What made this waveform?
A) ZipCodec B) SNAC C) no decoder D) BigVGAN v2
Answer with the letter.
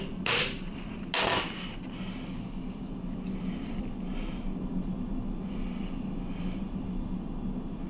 C